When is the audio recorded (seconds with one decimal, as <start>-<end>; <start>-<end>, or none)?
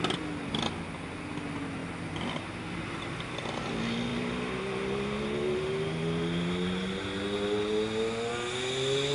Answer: 0.0-9.1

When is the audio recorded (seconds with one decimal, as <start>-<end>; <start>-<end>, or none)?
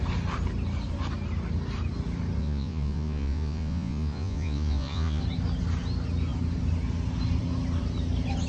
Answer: 0.0-2.4; 5.2-8.5